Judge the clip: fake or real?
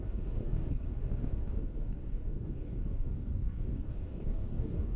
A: fake